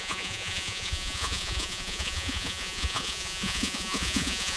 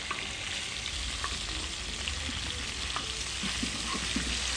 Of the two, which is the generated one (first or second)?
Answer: first